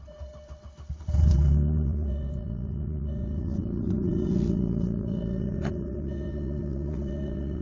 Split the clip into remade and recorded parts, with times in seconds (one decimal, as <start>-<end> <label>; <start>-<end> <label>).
0.0-7.6 remade